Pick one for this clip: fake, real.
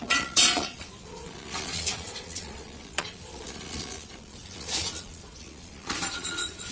fake